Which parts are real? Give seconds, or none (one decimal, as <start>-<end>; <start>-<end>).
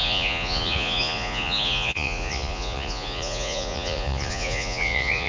none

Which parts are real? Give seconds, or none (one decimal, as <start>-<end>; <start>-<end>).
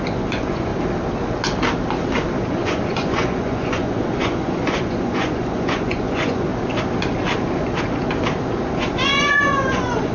0.7-2.5; 6.5-8.7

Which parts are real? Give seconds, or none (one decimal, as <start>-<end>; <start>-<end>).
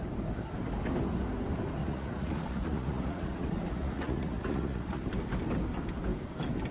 0.0-1.8; 5.0-6.7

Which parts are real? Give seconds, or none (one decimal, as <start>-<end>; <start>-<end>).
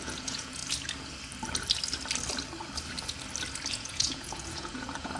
0.6-3.7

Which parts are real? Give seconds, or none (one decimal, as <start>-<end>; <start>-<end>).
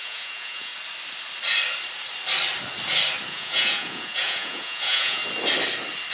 0.7-3.3; 5.2-6.1